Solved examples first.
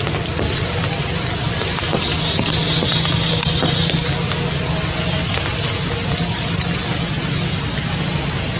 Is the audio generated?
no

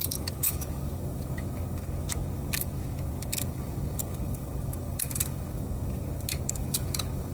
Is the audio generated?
yes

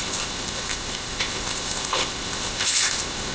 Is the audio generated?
yes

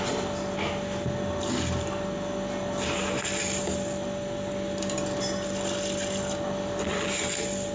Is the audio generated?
no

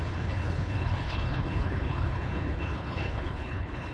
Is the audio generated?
yes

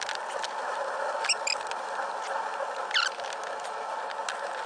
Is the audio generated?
no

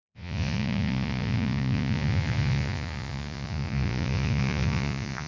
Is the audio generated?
yes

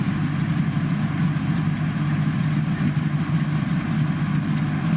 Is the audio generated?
no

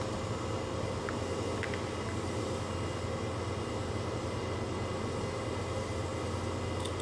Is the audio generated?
no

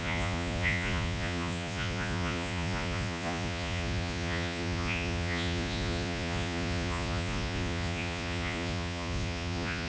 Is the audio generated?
yes